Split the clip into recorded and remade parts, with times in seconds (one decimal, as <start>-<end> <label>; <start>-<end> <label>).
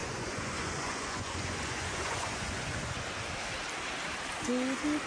0.0-3.1 remade; 3.1-5.1 recorded